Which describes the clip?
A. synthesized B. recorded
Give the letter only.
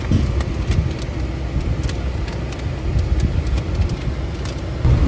B